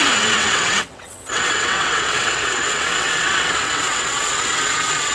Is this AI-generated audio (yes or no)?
yes